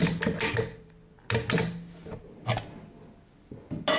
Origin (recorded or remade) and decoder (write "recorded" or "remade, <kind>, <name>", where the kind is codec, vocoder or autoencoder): recorded